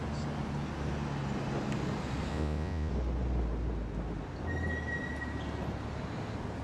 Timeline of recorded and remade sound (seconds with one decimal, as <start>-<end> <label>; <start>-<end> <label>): 0.0-2.3 recorded; 2.3-2.9 remade; 2.9-6.6 recorded

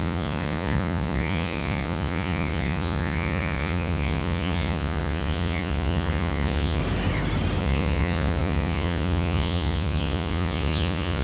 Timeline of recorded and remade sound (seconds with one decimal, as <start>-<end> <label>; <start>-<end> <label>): 0.0-6.8 remade; 6.8-7.6 recorded; 7.6-11.2 remade

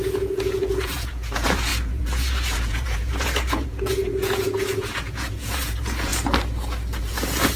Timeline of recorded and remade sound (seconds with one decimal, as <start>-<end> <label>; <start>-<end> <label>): 0.0-6.1 remade; 6.1-7.0 recorded; 7.0-7.6 remade

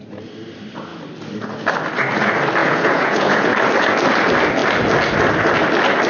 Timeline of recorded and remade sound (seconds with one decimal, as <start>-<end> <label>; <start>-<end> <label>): 0.0-2.6 recorded; 2.6-3.5 remade; 3.5-6.1 recorded

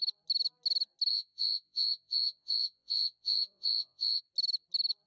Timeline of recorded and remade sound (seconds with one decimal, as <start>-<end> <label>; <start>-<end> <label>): 0.0-1.1 recorded; 1.1-4.2 remade; 4.2-5.1 recorded